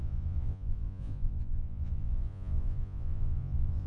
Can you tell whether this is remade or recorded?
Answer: remade